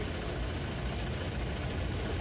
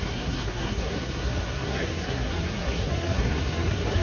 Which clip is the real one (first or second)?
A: first